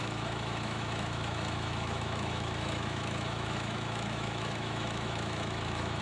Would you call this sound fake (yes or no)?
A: yes